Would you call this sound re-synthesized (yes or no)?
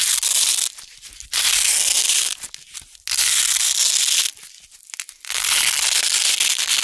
no